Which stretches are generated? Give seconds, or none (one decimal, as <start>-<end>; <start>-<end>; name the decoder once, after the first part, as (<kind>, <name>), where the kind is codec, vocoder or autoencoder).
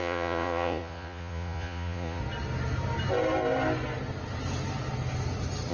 0.0-2.2 (vocoder, Vocos)